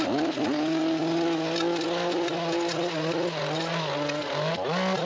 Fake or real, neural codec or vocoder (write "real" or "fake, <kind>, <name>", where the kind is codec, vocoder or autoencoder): real